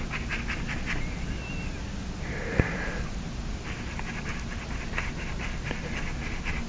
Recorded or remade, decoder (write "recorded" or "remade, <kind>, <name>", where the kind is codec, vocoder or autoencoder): recorded